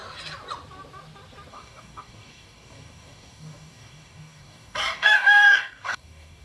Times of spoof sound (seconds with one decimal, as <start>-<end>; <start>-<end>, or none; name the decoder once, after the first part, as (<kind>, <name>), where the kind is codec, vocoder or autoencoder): 1.5-6.4 (codec, DAC)